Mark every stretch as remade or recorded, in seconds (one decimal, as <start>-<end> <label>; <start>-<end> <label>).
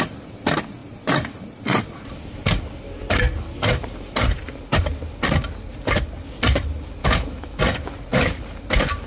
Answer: 0.0-7.0 recorded; 7.0-7.6 remade; 7.6-9.1 recorded